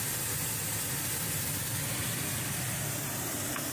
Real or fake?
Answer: real